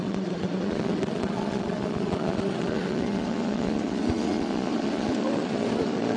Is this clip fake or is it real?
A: fake